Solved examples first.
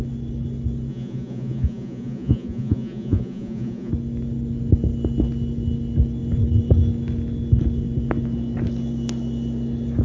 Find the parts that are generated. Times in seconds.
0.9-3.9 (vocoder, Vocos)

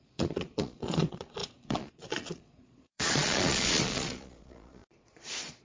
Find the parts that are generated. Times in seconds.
0.0-5.6 (vocoder, Vocos)

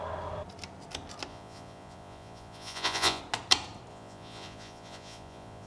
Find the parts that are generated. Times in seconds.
1.3-3.2 (vocoder, Vocos); 3.9-5.7

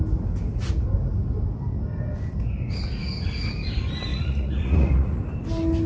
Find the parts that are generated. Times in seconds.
4.1-5.2 (vocoder, Vocos)

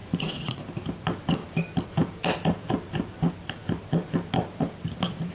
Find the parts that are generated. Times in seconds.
0.0-0.6 (vocoder, Vocos)

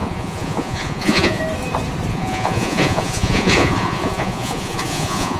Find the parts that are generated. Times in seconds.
0.0-1.4 (vocoder, Vocos); 2.1-5.4

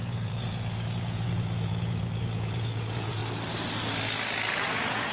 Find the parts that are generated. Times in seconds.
0.0-3.2 (vocoder, Vocos); 4.5-5.1

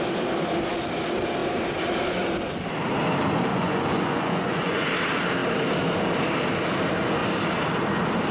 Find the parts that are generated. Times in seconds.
3.5-4.9 (vocoder, Vocos)